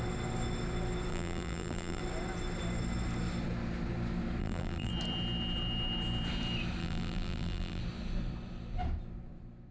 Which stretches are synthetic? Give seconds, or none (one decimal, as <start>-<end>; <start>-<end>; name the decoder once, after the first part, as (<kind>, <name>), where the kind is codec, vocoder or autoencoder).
1.1-2.0 (vocoder, BigVGAN v2); 4.4-4.9; 6.8-7.8